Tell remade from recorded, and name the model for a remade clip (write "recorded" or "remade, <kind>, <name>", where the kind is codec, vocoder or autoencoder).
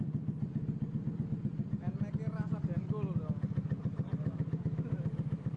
recorded